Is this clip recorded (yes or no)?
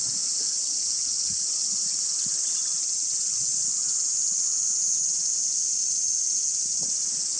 yes